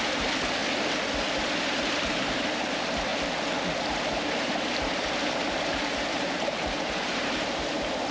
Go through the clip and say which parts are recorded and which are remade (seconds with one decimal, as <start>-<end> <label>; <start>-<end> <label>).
0.0-0.6 remade; 0.6-1.6 recorded; 1.6-3.1 remade; 3.1-3.9 recorded; 3.9-8.1 remade